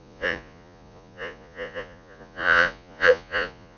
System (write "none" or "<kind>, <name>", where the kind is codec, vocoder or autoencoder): vocoder, Vocos